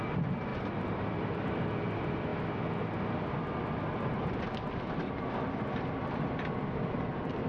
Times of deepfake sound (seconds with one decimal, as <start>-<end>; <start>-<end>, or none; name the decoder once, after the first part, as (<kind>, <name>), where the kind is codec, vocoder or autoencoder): none